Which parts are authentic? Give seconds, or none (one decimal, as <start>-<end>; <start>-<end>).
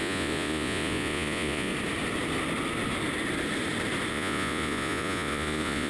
1.7-4.1